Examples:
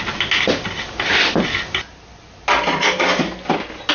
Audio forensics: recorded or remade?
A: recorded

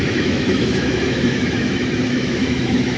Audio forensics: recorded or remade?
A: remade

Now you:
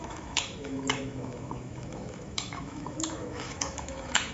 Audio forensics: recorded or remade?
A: remade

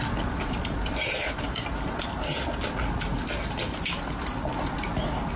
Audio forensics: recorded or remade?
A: recorded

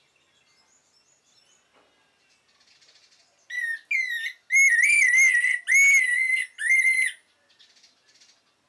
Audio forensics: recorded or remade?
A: recorded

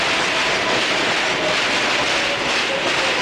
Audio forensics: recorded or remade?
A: recorded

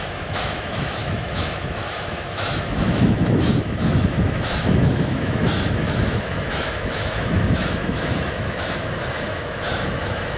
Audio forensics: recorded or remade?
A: remade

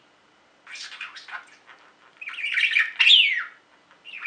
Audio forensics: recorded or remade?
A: recorded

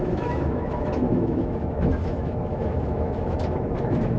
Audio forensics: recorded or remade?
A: remade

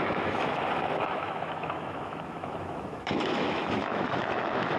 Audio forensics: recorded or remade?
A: remade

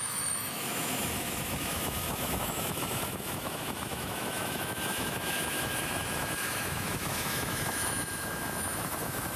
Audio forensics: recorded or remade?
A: remade